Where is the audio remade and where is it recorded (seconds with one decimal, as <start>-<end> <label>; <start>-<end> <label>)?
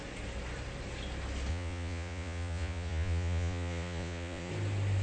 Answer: 0.0-1.5 recorded; 1.5-4.5 remade; 4.5-5.0 recorded